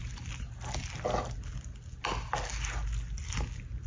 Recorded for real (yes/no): yes